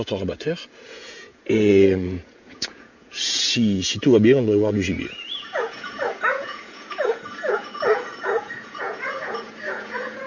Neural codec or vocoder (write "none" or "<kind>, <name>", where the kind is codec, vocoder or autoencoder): vocoder, Vocos